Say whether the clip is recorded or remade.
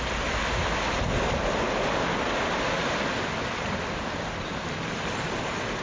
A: recorded